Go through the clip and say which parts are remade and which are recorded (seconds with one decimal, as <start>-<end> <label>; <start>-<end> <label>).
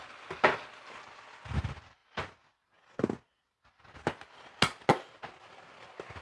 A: 0.0-6.2 recorded